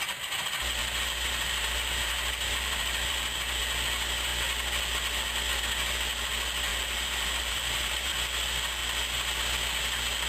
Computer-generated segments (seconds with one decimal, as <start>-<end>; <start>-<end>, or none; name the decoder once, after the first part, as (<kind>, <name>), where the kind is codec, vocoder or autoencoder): 0.8-3.6 (vocoder, BigVGAN v2); 6.7-8.1